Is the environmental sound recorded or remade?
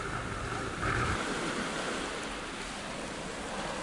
recorded